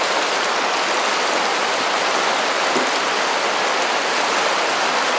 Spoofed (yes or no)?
no